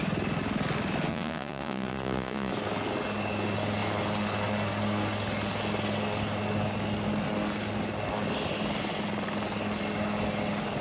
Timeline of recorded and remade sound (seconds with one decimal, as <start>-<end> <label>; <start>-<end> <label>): 0.0-1.1 recorded; 1.1-2.5 remade; 2.5-10.8 recorded